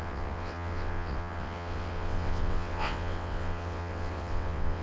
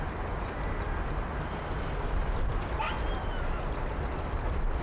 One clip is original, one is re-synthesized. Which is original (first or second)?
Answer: second